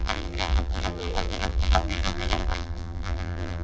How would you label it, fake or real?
fake